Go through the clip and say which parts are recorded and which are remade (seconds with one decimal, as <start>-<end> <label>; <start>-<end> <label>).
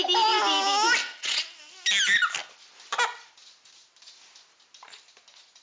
0.0-1.0 recorded; 1.0-1.6 remade; 1.6-5.6 recorded